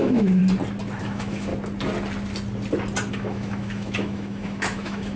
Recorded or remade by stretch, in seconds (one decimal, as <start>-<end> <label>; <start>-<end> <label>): 0.0-0.4 remade; 0.4-1.0 recorded; 1.0-1.5 remade; 1.5-3.1 recorded; 3.1-5.2 remade